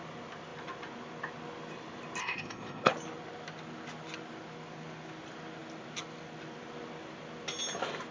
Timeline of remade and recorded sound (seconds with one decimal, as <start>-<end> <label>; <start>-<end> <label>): 0.0-2.2 recorded; 2.2-2.9 remade; 2.9-8.1 recorded